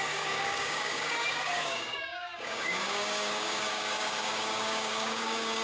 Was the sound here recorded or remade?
remade